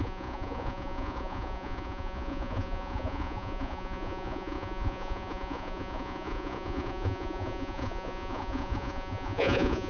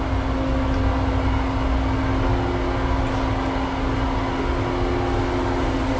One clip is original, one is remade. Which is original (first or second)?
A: second